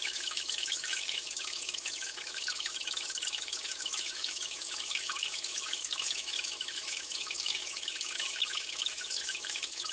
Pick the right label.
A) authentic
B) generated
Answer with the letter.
B